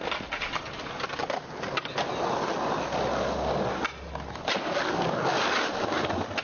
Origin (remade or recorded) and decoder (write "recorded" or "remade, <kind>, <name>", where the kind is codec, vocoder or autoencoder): recorded